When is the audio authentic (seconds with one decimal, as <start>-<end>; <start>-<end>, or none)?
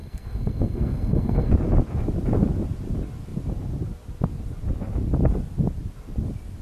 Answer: 1.5-6.6